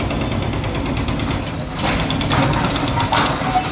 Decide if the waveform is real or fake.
real